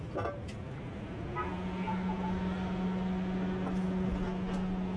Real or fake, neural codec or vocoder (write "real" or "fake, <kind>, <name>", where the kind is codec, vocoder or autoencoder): real